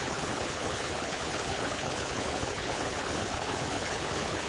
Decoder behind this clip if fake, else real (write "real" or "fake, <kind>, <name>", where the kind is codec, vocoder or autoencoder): fake, codec, HILCodec